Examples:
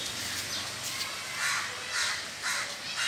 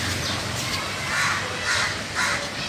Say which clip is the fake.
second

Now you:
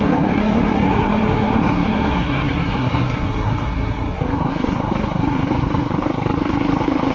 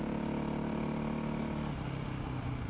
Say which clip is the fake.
first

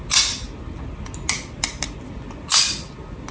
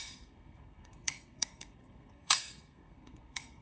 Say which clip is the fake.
second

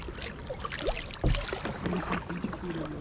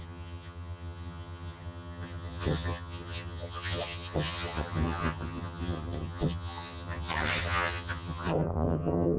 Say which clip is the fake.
second